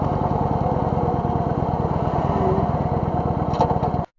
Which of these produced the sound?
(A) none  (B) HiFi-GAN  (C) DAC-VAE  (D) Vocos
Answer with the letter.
A